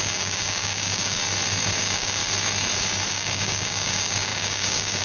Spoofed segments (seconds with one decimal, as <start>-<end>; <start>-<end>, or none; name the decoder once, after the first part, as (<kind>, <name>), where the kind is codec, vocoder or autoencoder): 0.0-1.2 (codec, DAC); 1.8-2.2; 3.1-5.0